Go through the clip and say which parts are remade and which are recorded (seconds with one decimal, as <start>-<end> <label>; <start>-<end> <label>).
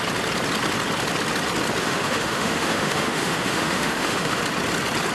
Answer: 0.0-1.8 recorded; 1.8-4.4 remade; 4.4-5.1 recorded